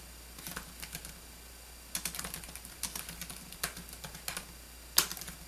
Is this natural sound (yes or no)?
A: yes